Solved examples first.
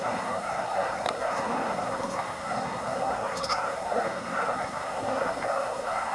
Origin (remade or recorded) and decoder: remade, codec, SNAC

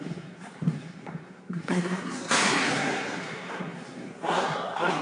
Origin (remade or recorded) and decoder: remade, codec, SNAC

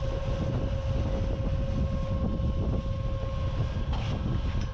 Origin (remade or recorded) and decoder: recorded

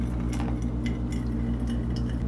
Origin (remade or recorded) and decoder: recorded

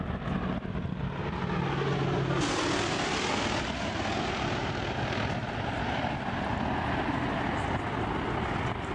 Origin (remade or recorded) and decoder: recorded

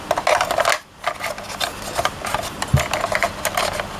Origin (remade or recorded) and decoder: recorded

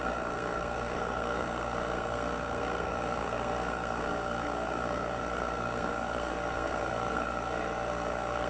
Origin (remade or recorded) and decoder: remade, codec, SNAC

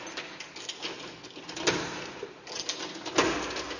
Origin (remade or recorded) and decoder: recorded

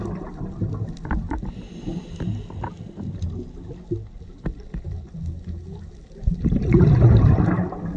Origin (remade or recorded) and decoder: recorded